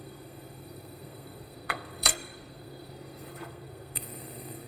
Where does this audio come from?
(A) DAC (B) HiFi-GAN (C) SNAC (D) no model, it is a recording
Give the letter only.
C